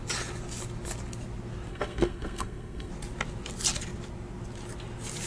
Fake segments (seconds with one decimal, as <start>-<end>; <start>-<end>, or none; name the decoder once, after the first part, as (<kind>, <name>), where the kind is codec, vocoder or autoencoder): 1.7-2.9 (codec, SNAC)